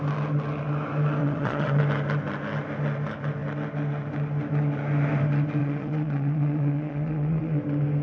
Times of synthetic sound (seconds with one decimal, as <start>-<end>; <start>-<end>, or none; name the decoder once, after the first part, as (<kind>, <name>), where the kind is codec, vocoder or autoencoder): 1.2-1.8 (vocoder, Vocos); 5.6-7.6